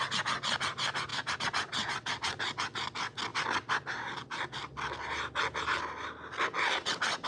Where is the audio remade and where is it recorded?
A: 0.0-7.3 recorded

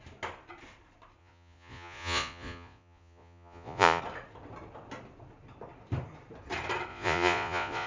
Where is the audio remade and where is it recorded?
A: 0.0-1.2 recorded; 1.2-4.0 remade; 4.0-6.9 recorded; 6.9-7.9 remade

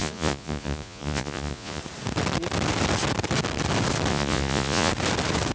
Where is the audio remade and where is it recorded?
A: 0.0-1.8 remade; 1.8-4.1 recorded; 4.1-4.9 remade; 4.9-5.5 recorded

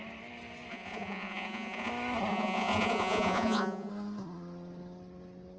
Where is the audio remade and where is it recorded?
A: 0.0-0.7 recorded; 0.7-1.9 remade; 1.9-2.3 recorded; 2.3-3.9 remade; 3.9-5.6 recorded

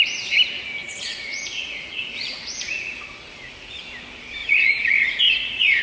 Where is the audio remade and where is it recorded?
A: 0.0-0.8 recorded; 0.8-3.8 remade; 3.8-4.4 recorded; 4.4-5.8 remade

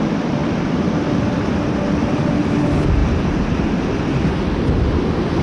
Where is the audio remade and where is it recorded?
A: 0.0-5.4 recorded

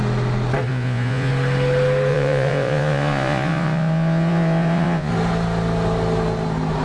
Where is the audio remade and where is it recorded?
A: 0.0-0.7 recorded; 0.7-1.3 remade; 1.3-2.1 recorded; 2.1-5.1 remade; 5.1-6.8 recorded

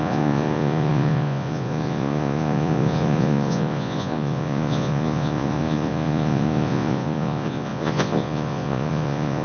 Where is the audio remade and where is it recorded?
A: 0.0-9.4 remade